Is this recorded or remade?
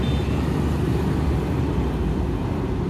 recorded